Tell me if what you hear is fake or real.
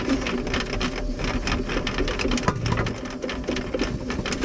real